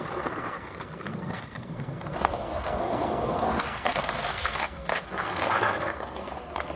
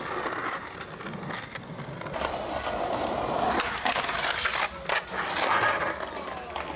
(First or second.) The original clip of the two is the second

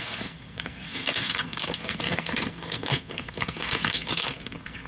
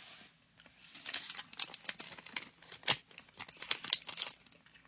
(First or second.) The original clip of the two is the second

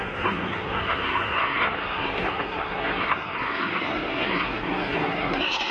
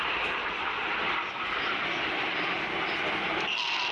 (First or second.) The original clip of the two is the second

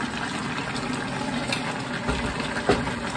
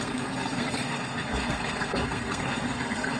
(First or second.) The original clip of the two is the first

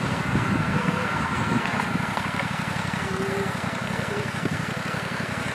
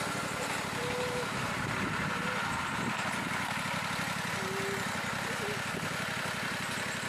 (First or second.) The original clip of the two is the second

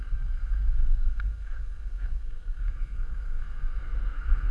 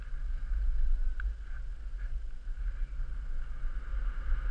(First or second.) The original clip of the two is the second